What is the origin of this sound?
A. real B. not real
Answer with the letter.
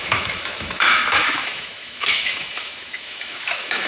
B